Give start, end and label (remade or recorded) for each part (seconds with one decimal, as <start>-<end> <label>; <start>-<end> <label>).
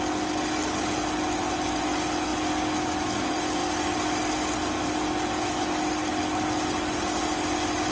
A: 0.0-7.9 recorded